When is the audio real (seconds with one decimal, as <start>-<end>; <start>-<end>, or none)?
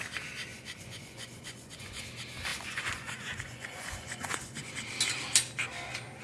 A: 0.0-0.5; 2.0-2.5; 4.7-6.2